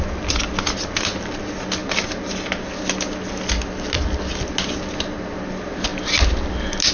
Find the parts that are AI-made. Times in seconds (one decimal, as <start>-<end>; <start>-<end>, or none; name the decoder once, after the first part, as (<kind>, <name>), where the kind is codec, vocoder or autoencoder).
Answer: none